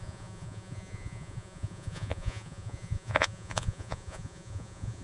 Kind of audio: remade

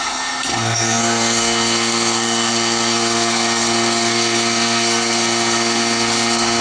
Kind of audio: remade